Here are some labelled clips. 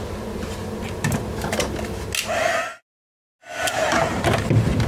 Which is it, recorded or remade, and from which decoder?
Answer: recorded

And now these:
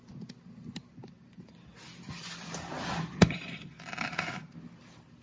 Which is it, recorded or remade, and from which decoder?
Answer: recorded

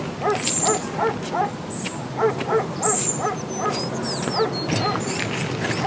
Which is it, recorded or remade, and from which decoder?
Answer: recorded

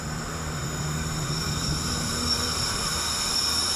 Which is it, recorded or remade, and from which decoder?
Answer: remade, vocoder, BigVGAN v2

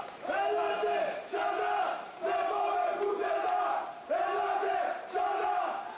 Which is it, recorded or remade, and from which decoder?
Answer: remade, vocoder, BigVGAN v2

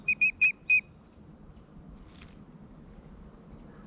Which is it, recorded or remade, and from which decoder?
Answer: recorded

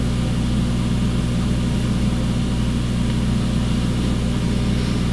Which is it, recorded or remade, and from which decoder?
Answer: recorded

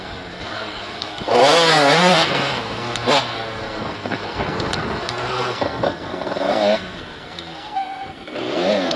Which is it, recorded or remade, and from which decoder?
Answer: remade, codec, SNAC